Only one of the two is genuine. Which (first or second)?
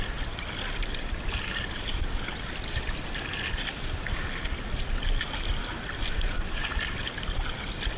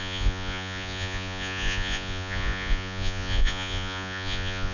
first